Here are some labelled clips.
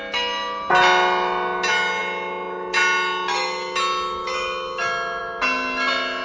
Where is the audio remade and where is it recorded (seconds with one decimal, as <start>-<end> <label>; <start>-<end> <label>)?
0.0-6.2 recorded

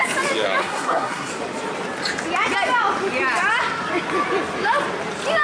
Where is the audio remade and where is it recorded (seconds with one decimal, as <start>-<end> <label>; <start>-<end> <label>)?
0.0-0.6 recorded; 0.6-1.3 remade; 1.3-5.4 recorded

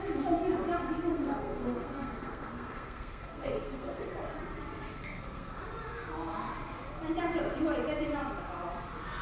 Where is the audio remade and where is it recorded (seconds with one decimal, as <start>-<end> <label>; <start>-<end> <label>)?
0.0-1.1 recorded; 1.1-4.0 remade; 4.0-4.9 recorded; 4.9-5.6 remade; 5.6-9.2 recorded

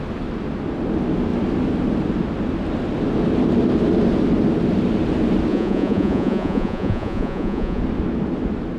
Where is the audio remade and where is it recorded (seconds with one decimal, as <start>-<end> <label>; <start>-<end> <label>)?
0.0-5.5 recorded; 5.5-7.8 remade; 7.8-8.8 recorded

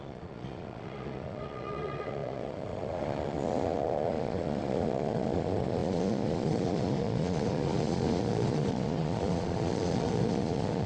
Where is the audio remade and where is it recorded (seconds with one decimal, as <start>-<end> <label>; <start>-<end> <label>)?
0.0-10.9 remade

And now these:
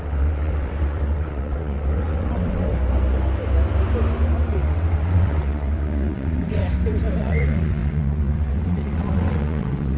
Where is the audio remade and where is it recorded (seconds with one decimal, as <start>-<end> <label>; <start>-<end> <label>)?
0.0-2.7 remade; 2.7-4.5 recorded; 4.5-6.6 remade; 6.6-7.2 recorded; 7.2-10.0 remade

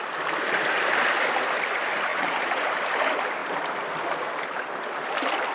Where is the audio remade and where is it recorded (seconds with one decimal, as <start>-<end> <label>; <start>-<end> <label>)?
0.0-2.1 recorded; 2.1-2.7 remade; 2.7-5.5 recorded